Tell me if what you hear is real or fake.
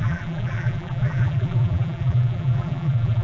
fake